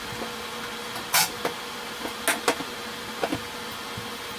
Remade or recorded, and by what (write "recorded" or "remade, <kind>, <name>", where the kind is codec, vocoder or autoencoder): recorded